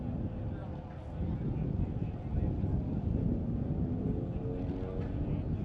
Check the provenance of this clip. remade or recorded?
recorded